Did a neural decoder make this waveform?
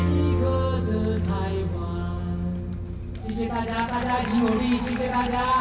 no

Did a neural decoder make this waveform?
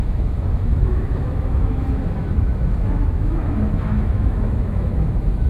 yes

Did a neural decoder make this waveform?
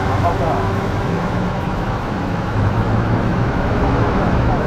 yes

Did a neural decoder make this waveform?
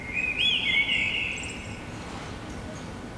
no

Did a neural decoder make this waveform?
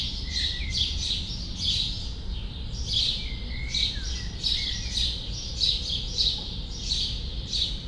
no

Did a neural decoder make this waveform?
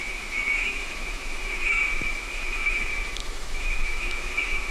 yes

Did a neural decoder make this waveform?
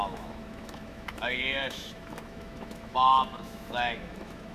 yes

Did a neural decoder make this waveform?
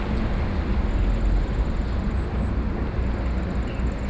no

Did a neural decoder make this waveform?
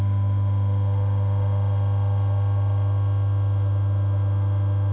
yes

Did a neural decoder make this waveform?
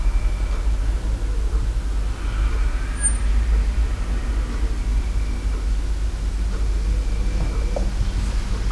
no